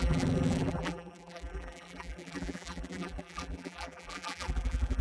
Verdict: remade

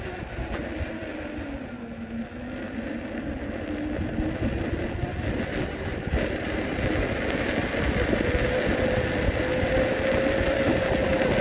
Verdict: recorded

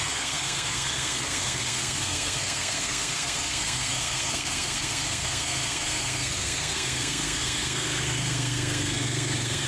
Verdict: remade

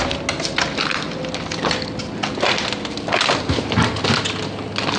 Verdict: recorded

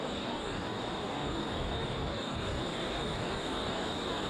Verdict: remade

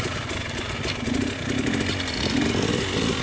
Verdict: recorded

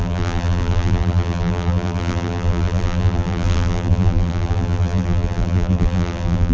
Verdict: remade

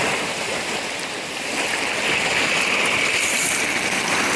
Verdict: recorded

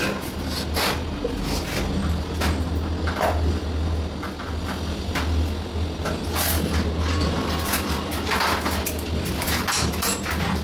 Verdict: recorded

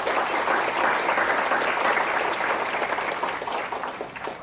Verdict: recorded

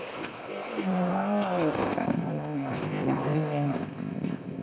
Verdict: remade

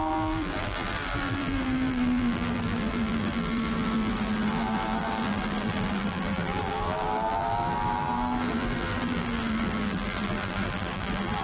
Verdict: remade